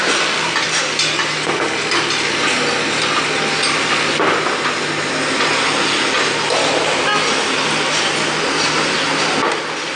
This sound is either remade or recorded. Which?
recorded